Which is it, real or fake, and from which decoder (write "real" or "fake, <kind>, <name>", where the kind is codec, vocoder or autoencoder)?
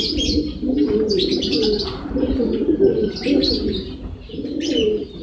real